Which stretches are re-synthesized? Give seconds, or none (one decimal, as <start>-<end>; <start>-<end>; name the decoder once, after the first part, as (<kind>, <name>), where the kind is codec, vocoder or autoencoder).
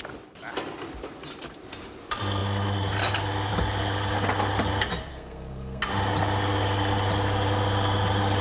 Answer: 5.1-5.8 (codec, SNAC)